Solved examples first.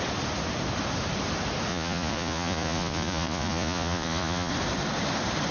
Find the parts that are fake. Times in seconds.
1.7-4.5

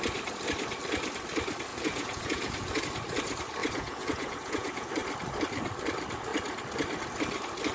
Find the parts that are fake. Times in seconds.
1.7-2.8; 3.6-4.9

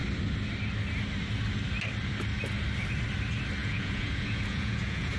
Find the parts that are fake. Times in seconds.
3.6-5.2

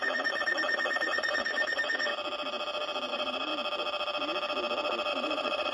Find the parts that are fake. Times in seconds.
0.0-2.1; 3.1-3.5; 5.1-5.7

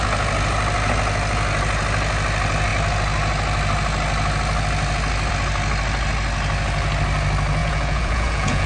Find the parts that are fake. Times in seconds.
7.6-8.7

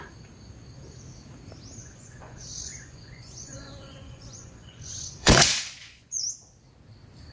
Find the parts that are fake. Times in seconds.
1.8-6.2